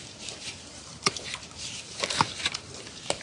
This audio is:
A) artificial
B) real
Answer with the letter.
A